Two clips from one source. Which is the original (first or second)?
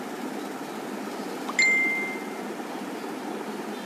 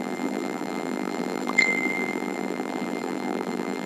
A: first